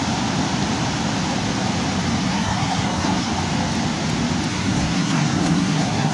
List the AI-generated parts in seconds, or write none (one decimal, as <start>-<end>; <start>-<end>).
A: 2.2-3.3; 4.5-6.1